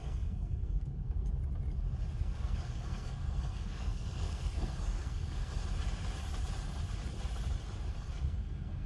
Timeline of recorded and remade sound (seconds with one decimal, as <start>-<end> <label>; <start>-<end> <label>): 0.0-1.3 remade; 1.3-2.2 recorded; 2.2-5.6 remade; 5.6-7.9 recorded; 7.9-8.9 remade